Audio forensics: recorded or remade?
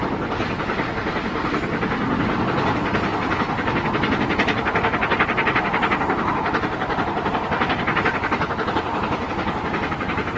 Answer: recorded